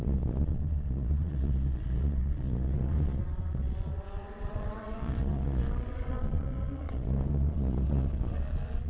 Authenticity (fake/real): fake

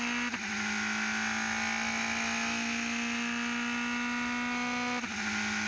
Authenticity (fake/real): real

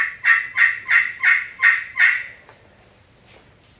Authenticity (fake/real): real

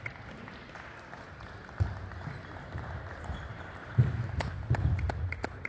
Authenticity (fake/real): real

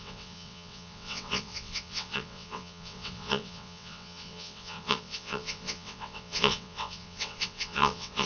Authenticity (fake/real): fake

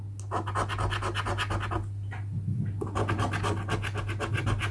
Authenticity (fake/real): real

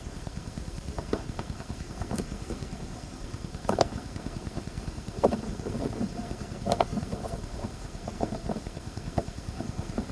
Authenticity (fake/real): fake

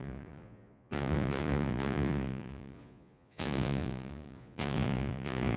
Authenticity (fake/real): fake